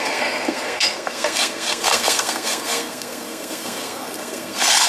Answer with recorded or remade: remade